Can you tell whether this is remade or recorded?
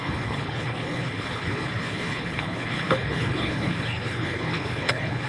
remade